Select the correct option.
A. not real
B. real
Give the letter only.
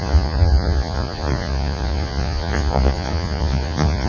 A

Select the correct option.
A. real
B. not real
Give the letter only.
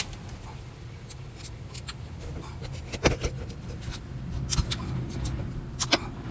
A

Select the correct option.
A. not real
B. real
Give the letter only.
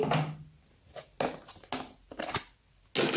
B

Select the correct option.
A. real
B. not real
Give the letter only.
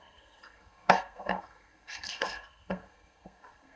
B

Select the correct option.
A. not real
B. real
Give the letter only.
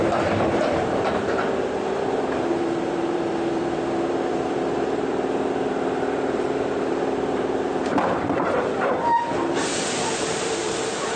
A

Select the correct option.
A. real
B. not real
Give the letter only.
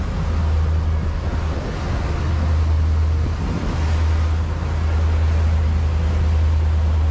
A